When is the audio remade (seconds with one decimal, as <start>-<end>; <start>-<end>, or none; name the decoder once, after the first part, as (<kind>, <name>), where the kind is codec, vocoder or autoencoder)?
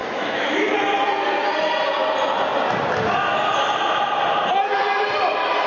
0.0-0.7 (autoencoder, DAC-VAE)